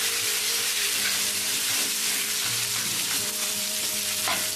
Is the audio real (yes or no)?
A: no